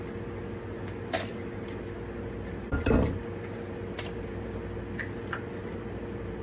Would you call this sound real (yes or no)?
yes